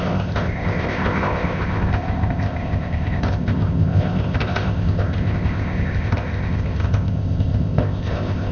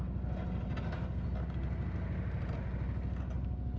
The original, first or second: second